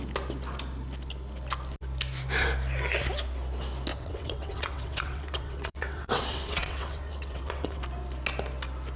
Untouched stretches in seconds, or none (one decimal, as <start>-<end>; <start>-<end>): 0.0-3.9; 7.8-9.0